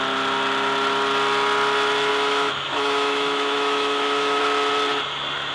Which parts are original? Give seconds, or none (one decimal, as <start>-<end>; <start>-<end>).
0.0-2.1; 4.4-5.5